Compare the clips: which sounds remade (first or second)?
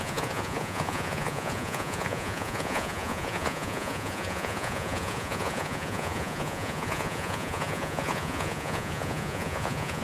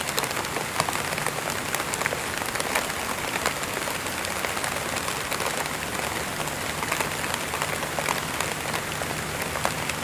first